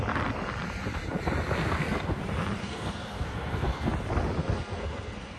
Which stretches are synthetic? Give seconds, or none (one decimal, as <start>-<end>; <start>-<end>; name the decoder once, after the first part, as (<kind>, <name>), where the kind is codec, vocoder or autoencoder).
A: 1.6-2.2 (codec, SNAC); 2.6-3.9; 4.4-5.4

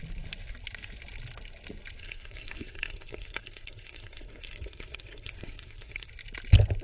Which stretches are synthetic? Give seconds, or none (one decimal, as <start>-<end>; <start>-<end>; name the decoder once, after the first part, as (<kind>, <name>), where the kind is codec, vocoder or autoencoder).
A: 2.0-6.1 (codec, SNAC)

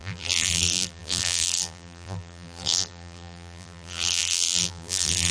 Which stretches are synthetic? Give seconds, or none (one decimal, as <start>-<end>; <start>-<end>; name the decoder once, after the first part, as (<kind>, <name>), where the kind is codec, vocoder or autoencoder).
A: 0.0-5.3 (vocoder, BigVGAN v2)

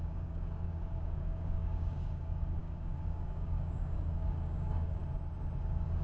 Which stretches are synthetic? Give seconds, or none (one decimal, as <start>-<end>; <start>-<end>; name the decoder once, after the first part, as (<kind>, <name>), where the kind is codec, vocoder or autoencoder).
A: 0.0-5.0 (codec, DAC); 5.6-6.0

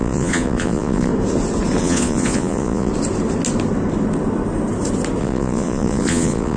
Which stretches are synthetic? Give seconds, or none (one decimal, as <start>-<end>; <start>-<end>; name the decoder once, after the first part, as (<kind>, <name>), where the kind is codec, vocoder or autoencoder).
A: 0.0-1.1 (vocoder, Vocos); 1.8-2.9; 5.2-6.6

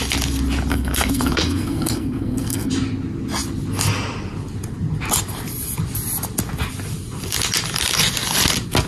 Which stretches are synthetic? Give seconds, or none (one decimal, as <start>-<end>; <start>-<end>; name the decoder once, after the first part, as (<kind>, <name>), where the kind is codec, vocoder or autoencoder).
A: 0.7-2.7 (codec, SNAC)